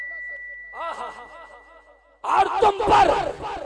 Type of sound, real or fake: real